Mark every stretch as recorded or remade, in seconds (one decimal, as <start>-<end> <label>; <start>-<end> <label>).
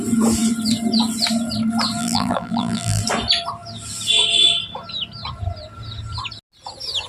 0.0-2.0 recorded; 2.0-3.0 remade; 3.0-7.1 recorded